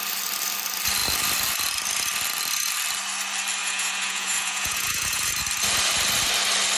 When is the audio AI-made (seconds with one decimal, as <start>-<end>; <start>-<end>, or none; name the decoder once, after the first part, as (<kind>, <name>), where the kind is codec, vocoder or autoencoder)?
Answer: 3.6-5.3 (vocoder, Vocos)